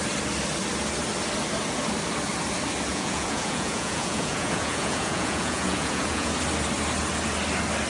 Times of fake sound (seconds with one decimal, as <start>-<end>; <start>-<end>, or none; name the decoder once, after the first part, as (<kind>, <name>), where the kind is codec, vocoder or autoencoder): 2.9-6.3 (vocoder, Vocos)